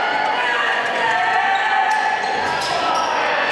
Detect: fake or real fake